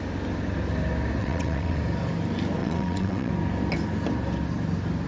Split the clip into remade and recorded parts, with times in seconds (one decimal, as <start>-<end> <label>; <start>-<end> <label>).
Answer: 0.0-1.2 recorded; 1.2-1.8 remade; 1.8-2.6 recorded; 2.6-3.3 remade; 3.3-5.1 recorded